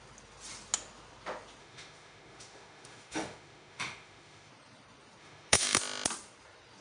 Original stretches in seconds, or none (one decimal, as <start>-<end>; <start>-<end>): 0.0-1.6; 4.5-5.2; 5.8-6.8

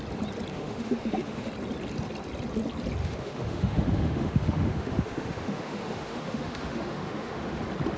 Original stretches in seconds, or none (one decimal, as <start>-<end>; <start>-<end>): 0.0-0.5; 1.5-3.0; 7.6-8.0

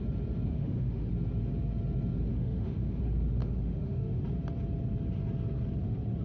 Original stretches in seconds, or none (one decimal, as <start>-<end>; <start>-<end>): 0.0-0.5; 1.1-2.3; 3.0-3.4; 4.2-6.2

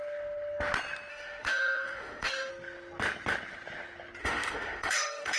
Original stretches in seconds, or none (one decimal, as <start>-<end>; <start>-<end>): 0.0-1.1; 2.5-4.2

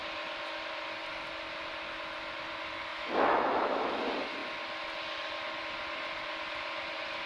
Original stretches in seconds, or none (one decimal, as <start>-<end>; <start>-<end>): 0.0-2.9; 4.0-7.3

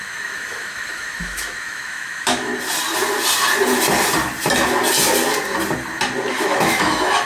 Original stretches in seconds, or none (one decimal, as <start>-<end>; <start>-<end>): 2.5-6.3

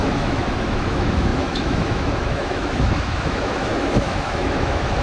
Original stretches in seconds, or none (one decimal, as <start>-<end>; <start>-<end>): none

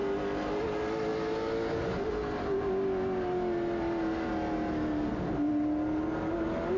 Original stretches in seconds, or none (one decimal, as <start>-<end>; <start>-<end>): 0.0-6.8